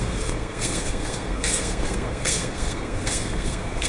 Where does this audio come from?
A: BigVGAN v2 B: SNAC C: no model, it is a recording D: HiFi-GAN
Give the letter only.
B